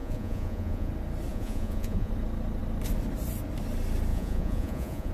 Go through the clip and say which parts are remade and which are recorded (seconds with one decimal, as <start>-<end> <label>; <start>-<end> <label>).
0.0-0.9 remade; 0.9-1.3 recorded; 1.3-2.1 remade; 2.1-4.1 recorded; 4.1-5.1 remade